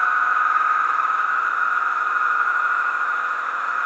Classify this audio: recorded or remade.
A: remade